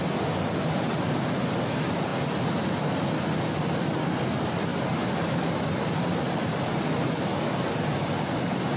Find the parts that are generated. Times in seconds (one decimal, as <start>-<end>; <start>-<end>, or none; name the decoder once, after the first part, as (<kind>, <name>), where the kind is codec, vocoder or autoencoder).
none